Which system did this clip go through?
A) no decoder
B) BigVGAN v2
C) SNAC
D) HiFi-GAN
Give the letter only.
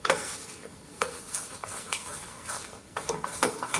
C